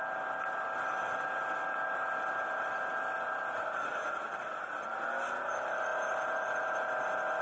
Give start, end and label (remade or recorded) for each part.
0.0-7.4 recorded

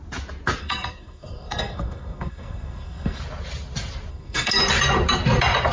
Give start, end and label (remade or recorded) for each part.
0.0-0.6 recorded; 0.6-3.2 remade; 3.2-4.1 recorded; 4.1-4.6 remade; 4.6-5.7 recorded

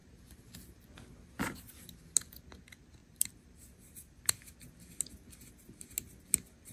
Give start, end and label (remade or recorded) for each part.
0.0-3.0 recorded; 3.0-4.2 remade; 4.2-6.7 recorded

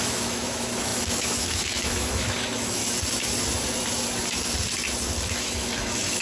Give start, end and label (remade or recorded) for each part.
0.0-2.8 remade; 2.8-5.3 recorded; 5.3-6.2 remade

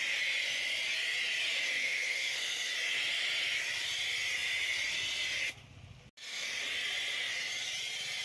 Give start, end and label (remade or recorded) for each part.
0.0-1.8 recorded; 1.8-2.7 remade; 2.7-8.2 recorded

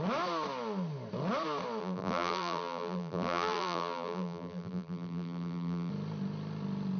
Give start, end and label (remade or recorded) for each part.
0.0-1.8 recorded; 1.8-5.9 remade; 5.9-7.0 recorded

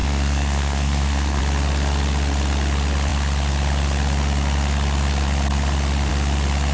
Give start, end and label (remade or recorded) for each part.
0.0-1.4 remade; 1.4-6.7 recorded

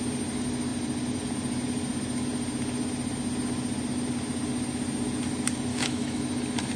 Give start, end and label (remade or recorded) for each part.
0.0-5.7 recorded; 5.7-6.2 remade; 6.2-6.8 recorded